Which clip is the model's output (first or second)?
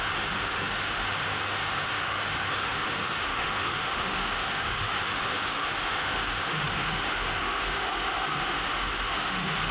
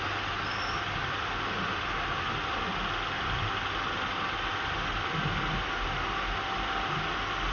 first